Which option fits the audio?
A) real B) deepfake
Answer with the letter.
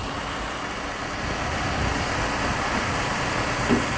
A